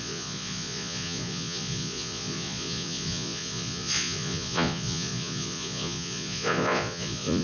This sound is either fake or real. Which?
fake